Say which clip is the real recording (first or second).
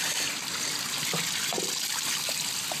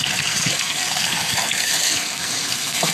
first